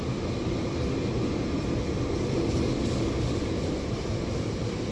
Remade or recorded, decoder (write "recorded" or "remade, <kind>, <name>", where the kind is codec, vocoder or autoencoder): recorded